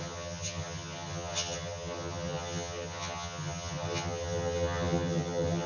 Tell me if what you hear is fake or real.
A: fake